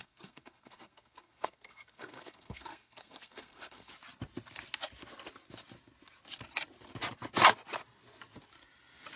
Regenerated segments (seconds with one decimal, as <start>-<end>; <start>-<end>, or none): 0.0-3.9